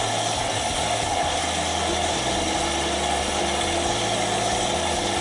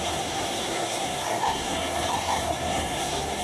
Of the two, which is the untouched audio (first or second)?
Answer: first